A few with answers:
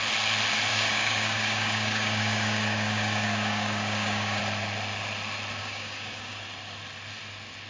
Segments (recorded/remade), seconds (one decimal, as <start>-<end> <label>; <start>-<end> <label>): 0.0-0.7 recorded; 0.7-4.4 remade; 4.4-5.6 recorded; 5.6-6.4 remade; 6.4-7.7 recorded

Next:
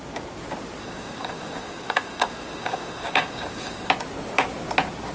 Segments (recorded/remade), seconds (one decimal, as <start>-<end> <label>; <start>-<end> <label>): 0.0-0.8 recorded; 0.8-3.9 remade; 3.9-5.1 recorded

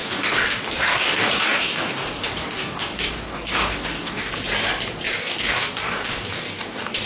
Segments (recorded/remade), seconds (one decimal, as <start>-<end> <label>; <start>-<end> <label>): 0.0-4.3 remade; 4.3-5.2 recorded; 5.2-7.1 remade